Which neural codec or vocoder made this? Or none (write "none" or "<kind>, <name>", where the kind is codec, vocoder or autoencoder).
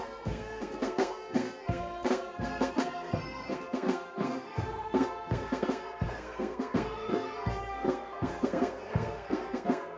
codec, SNAC